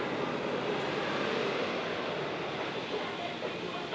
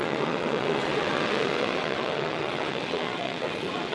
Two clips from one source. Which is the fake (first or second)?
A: second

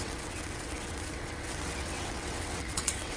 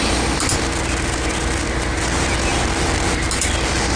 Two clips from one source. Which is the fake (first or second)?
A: first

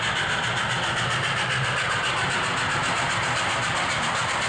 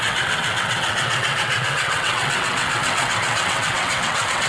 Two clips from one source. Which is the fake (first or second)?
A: second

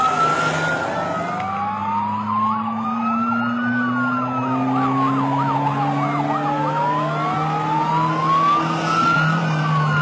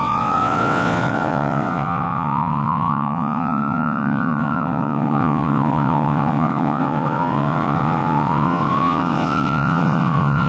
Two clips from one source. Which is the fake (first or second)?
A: second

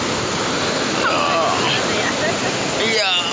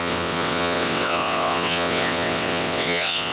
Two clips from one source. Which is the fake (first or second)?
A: second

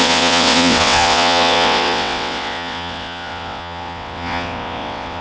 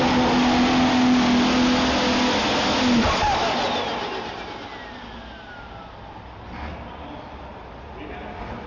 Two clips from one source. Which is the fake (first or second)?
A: first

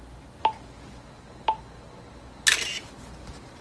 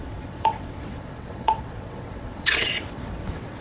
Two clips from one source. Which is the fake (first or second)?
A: second